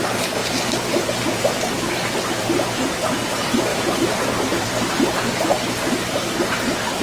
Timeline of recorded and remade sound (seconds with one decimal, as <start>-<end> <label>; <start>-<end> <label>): 0.0-7.0 recorded